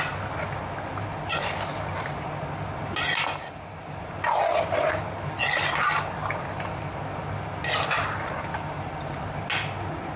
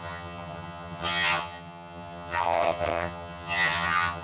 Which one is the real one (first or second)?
first